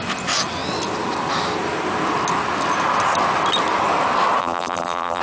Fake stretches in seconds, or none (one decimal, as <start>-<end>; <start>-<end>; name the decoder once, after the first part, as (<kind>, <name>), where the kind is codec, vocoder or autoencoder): 4.4-5.2 (vocoder, BigVGAN v2)